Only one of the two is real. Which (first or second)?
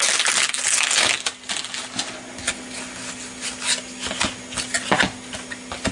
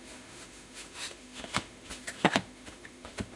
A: first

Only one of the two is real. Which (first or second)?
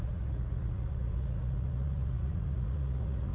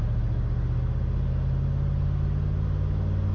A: second